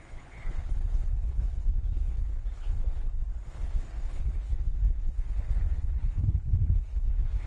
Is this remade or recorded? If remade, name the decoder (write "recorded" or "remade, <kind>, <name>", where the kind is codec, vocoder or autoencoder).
remade, codec, HILCodec